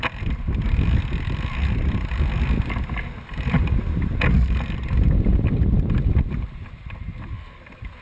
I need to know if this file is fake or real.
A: real